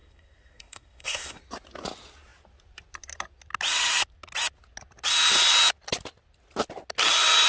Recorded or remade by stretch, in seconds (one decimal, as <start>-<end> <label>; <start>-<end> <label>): 0.0-1.4 remade; 1.4-7.5 recorded